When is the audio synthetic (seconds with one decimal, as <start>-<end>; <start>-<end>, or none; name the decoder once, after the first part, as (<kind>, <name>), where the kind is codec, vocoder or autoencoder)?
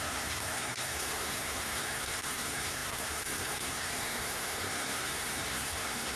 0.0-6.2 (codec, SNAC)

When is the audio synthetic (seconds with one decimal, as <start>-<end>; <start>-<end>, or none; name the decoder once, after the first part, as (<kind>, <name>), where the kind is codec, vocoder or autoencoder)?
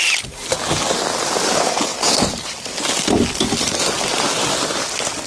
none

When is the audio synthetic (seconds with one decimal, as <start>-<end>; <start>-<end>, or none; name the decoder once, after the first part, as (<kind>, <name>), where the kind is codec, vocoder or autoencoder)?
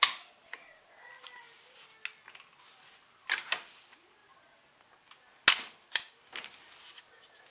none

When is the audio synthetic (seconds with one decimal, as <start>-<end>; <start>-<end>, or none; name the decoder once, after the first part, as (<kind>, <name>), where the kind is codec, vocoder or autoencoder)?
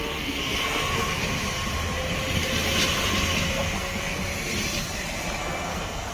0.0-1.2 (codec, SNAC); 3.5-4.2; 5.4-6.1